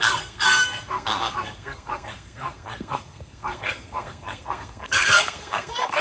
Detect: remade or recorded remade